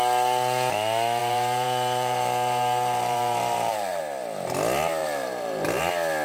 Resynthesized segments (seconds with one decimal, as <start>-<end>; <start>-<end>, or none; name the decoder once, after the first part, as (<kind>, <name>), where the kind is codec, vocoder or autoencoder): 1.2-4.0 (vocoder, BigVGAN v2); 5.0-5.8